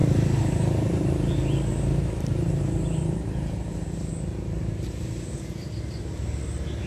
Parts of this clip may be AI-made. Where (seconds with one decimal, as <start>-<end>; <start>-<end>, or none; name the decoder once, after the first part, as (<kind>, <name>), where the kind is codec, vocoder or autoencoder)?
0.0-4.1 (vocoder, BigVGAN v2); 4.6-6.0